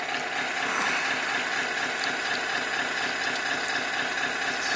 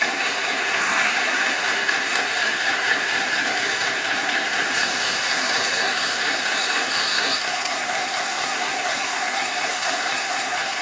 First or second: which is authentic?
first